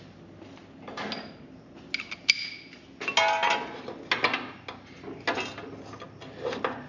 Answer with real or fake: real